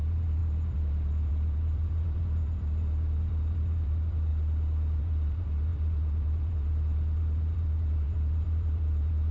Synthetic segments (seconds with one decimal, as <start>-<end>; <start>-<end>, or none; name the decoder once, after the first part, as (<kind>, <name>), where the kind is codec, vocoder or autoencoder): 0.0-4.3 (vocoder, BigVGAN v2); 5.0-9.3